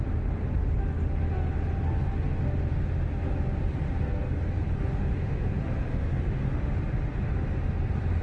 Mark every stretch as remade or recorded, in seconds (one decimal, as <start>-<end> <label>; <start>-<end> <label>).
0.0-4.9 recorded; 4.9-5.5 remade; 5.5-5.9 recorded; 5.9-6.7 remade; 6.7-8.2 recorded